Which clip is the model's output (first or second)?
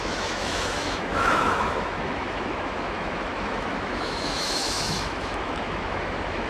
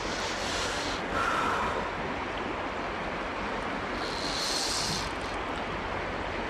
first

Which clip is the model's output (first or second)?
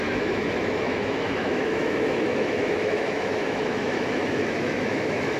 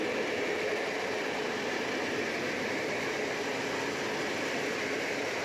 first